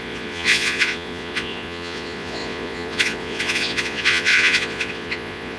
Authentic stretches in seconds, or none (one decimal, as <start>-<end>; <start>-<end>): none